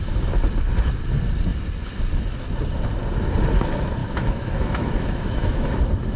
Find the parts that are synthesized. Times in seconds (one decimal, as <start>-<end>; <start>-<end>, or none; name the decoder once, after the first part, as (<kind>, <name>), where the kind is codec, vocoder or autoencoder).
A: 4.0-5.7 (autoencoder, DAC-VAE)

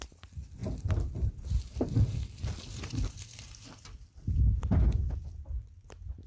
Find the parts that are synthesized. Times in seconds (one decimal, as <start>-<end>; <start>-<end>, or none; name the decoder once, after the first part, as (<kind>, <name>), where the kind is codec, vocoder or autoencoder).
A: 0.6-4.4 (vocoder, BigVGAN v2)

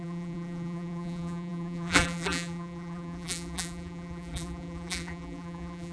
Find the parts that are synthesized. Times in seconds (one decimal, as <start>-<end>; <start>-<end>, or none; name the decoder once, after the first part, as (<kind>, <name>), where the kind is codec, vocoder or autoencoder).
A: 0.0-5.9 (vocoder, BigVGAN v2)

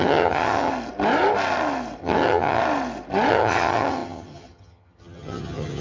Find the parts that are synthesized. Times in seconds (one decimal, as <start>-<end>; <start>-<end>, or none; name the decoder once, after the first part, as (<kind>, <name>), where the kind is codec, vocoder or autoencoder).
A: 0.0-0.7 (vocoder, HiFi-GAN); 2.0-2.6; 3.3-5.8

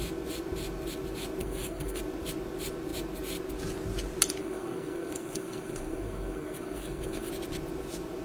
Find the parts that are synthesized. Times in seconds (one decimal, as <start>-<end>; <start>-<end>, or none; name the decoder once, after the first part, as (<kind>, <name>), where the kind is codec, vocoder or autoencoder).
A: 1.4-2.0 (codec, SNAC); 4.4-7.3